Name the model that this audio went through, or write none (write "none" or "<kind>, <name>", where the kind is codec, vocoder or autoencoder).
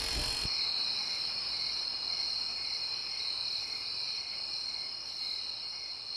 none